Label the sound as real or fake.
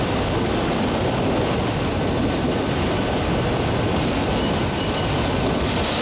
real